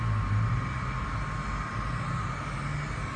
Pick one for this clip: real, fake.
real